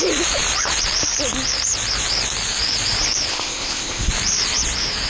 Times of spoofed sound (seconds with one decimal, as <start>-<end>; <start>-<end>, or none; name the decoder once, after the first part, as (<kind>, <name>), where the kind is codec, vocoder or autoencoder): 3.3-4.1 (codec, ZipCodec)